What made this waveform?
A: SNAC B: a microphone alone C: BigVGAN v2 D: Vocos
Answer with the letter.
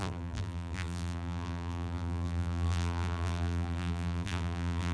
C